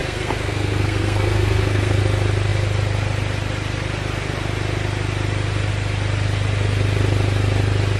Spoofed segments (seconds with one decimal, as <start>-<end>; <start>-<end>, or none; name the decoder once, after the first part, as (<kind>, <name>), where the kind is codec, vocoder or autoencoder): 0.0-2.0 (codec, SNAC)